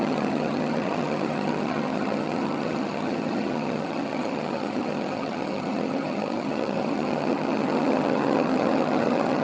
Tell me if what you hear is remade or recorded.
remade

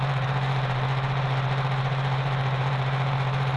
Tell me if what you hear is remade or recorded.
remade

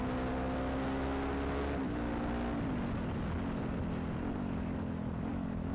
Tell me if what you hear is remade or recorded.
recorded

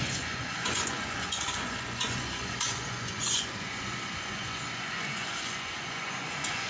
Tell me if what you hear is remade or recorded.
remade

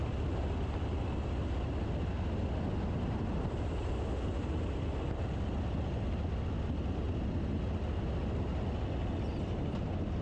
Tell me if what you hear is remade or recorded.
recorded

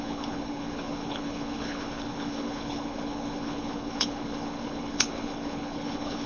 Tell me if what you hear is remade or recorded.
remade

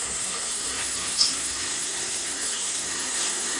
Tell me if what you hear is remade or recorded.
remade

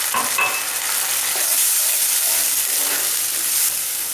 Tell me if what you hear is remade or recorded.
recorded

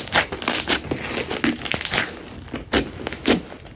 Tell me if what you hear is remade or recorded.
recorded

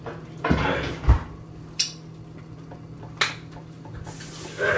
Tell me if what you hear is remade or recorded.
recorded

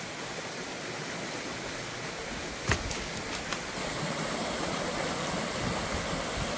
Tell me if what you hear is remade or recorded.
recorded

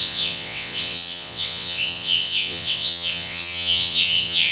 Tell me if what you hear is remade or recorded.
remade